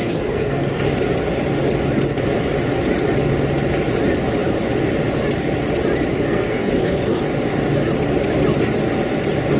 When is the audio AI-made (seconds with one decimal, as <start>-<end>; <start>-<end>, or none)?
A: 0.0-0.8; 6.1-7.2